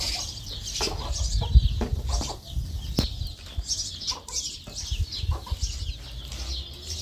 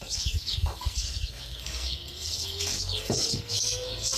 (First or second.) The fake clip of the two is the second